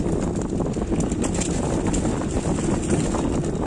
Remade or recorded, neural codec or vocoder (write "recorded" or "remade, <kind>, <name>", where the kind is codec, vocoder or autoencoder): recorded